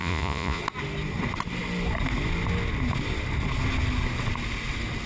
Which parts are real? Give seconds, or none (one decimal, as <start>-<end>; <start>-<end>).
0.6-5.1